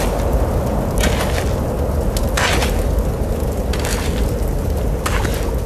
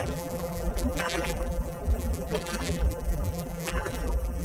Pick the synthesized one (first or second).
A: second